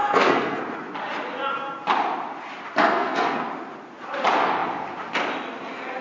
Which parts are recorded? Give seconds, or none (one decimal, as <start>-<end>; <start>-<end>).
0.6-2.8; 3.4-6.0